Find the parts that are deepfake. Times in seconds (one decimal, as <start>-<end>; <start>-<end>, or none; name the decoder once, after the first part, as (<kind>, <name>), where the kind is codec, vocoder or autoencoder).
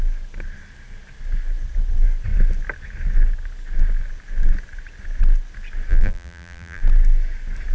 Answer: 5.9-6.8 (vocoder, BigVGAN v2)